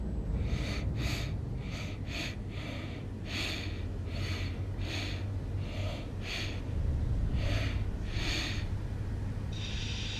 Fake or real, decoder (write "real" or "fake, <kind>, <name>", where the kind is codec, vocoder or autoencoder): real